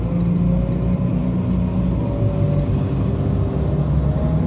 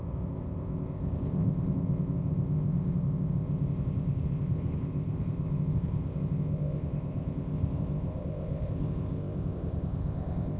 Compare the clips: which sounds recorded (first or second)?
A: first